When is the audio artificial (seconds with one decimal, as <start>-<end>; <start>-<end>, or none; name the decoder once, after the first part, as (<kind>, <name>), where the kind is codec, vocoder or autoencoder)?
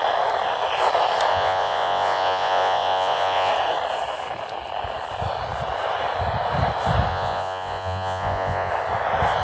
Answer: 1.3-3.5 (vocoder, Vocos); 7.1-8.7